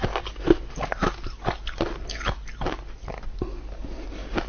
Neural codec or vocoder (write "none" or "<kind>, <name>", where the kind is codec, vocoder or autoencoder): none